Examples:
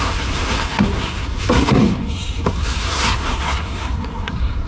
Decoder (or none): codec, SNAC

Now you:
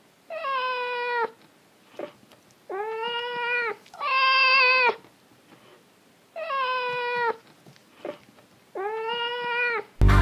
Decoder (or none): none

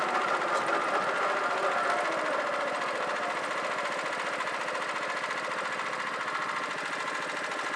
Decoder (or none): none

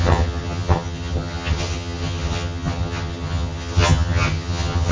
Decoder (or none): vocoder, HiFi-GAN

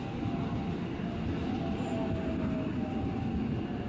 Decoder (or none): none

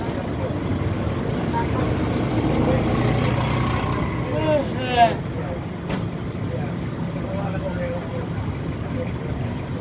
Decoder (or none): none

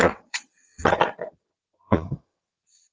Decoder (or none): vocoder, WaveNeXt